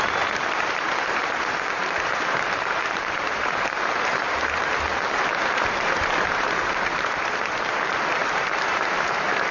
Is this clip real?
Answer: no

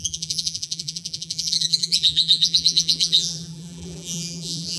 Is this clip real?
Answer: no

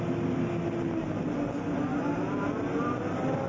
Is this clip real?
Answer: yes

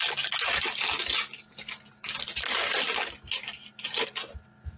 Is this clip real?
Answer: yes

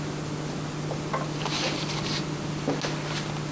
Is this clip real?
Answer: yes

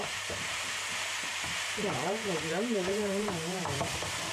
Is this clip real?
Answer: no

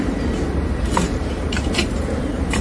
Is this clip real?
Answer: no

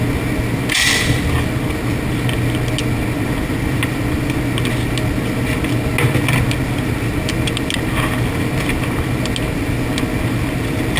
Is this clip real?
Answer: yes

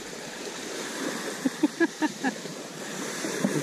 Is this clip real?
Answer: no